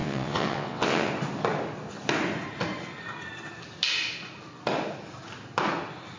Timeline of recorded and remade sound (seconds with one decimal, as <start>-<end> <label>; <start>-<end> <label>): 0.0-1.1 remade; 1.1-6.2 recorded